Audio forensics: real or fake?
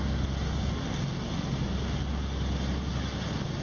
real